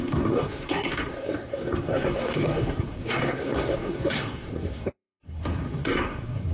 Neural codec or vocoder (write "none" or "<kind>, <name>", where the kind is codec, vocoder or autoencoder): codec, SNAC